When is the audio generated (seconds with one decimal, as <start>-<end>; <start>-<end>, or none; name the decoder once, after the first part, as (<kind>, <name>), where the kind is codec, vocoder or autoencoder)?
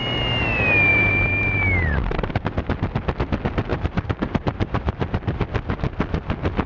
0.9-2.3 (vocoder, BigVGAN v2); 3.7-5.4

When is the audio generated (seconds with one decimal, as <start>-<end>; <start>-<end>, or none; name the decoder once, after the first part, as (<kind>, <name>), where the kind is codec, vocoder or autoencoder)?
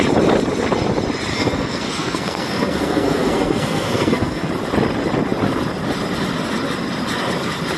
1.3-4.5 (codec, SNAC)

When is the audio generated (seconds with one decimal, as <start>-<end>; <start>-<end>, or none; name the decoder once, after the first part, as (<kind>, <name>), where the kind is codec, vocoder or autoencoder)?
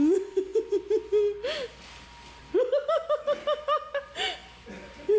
none